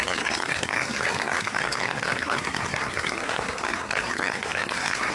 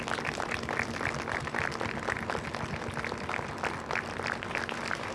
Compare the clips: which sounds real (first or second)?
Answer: second